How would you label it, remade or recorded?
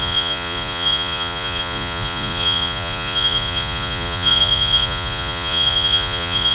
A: remade